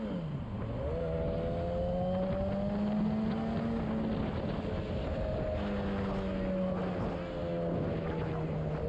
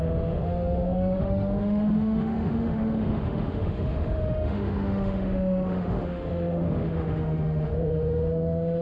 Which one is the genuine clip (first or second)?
first